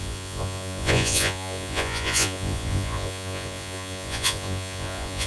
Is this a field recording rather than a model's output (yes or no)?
no